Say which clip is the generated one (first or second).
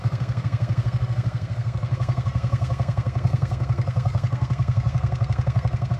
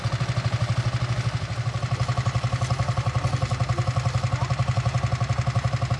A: first